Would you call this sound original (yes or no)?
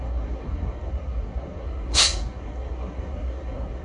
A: no